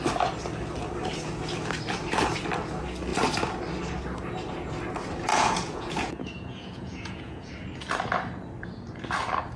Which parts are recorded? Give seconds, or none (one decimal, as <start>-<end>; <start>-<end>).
0.0-5.3; 7.5-9.6